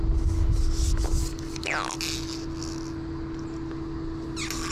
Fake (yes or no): no